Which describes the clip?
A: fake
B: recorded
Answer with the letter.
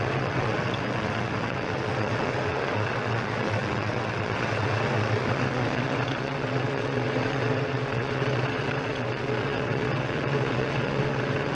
A